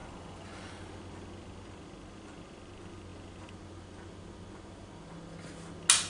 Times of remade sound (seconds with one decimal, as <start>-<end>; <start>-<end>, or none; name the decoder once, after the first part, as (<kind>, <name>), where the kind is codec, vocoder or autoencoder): 0.0-0.7 (vocoder, Vocos)